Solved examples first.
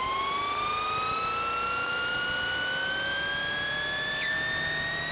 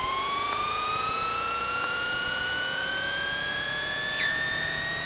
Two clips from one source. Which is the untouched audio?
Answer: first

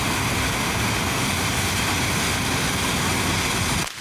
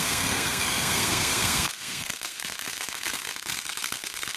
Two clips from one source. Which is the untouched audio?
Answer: first